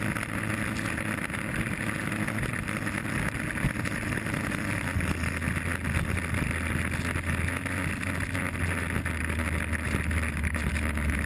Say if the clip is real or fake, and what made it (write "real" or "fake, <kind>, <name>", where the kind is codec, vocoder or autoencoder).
real